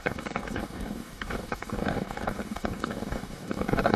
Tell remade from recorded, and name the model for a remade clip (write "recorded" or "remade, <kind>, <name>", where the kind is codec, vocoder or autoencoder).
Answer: remade, codec, DAC